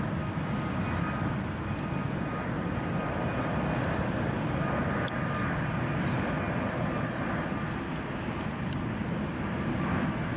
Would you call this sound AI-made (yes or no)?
no